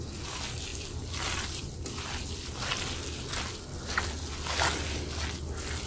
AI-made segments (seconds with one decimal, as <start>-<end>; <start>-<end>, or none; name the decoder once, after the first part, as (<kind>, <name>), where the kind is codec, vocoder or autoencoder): none